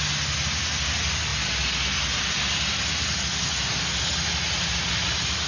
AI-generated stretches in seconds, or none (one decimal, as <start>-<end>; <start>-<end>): none

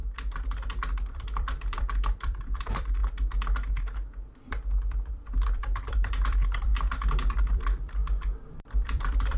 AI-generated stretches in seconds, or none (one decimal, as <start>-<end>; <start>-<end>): 0.7-3.0; 5.1-6.7; 7.4-9.4

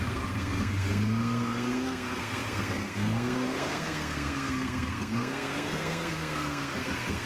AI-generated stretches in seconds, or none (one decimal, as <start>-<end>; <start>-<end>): 0.0-7.3

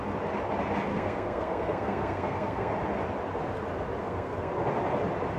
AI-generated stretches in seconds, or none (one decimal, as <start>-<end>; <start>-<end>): 0.9-2.7; 4.0-4.5

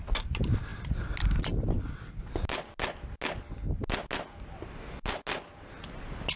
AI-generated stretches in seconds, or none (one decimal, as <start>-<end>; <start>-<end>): none

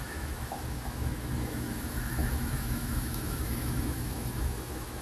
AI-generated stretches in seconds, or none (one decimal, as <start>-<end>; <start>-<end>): 0.0-5.0

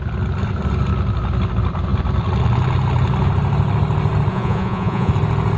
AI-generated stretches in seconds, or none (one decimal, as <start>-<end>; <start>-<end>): 4.3-5.1